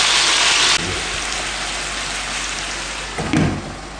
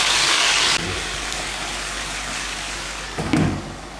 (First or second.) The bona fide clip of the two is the first